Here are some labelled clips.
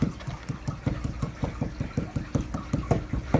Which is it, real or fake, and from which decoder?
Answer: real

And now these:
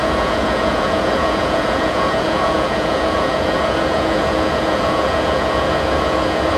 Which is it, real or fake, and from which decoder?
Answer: fake, vocoder, Vocos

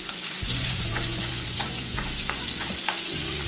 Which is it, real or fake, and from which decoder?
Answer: fake, vocoder, Vocos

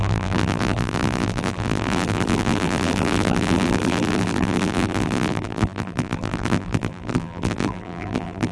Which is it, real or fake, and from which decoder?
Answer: fake, vocoder, BigVGAN v2